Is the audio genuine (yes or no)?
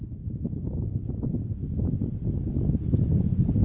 yes